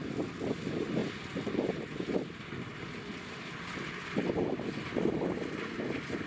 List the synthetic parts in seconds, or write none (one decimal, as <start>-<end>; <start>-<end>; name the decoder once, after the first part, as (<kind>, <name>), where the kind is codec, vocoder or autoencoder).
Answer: none